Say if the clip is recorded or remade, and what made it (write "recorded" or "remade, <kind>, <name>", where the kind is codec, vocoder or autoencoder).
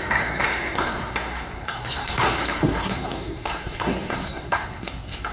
remade, codec, SNAC